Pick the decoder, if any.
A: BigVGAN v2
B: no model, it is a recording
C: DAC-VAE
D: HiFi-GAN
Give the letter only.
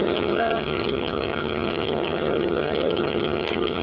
D